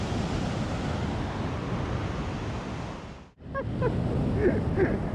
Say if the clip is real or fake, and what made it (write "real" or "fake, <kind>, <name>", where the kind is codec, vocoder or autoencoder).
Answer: real